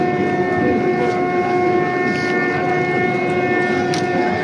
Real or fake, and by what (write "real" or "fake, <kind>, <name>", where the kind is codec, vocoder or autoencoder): real